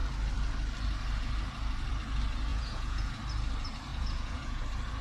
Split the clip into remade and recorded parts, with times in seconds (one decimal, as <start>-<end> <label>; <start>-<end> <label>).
0.0-2.5 recorded; 2.5-3.2 remade; 3.2-3.9 recorded; 3.9-4.6 remade; 4.6-5.0 recorded